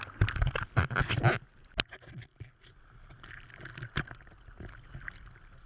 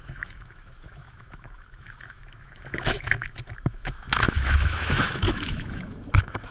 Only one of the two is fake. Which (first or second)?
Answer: second